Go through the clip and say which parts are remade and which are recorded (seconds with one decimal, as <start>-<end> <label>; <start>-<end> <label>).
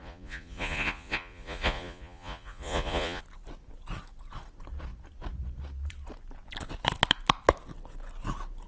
0.0-3.2 remade; 3.2-8.7 recorded